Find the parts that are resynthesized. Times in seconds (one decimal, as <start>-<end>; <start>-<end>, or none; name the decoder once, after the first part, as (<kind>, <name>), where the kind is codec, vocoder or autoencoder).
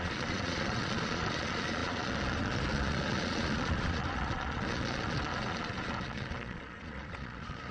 0.0-7.7 (vocoder, Vocos)